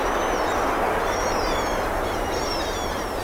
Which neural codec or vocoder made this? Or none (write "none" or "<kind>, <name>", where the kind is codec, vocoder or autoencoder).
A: vocoder, BigVGAN v2